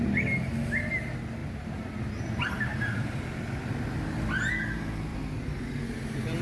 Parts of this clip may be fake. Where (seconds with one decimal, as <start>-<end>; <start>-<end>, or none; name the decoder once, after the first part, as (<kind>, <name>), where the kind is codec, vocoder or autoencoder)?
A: 1.4-3.7 (vocoder, BigVGAN v2); 5.1-5.6